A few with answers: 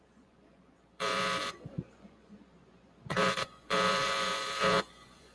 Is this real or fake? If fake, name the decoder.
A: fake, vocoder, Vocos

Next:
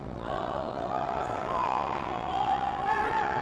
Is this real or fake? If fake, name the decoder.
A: fake, vocoder, WaveNeXt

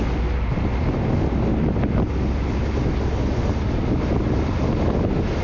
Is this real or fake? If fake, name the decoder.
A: real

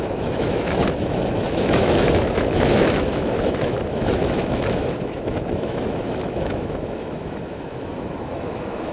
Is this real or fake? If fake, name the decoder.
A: fake, autoencoder, DAC-VAE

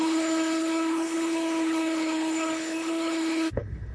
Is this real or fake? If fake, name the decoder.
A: fake, codec, HILCodec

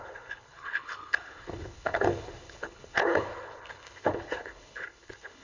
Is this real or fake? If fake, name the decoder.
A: fake, codec, HILCodec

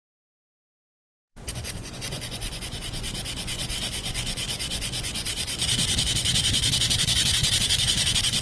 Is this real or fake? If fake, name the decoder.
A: fake, vocoder, Vocos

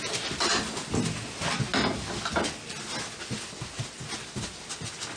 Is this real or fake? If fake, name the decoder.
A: real